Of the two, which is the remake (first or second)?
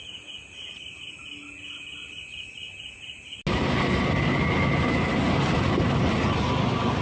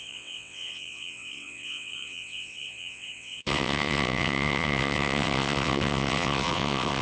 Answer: second